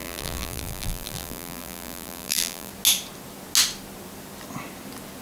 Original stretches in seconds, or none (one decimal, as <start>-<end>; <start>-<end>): 2.7-5.2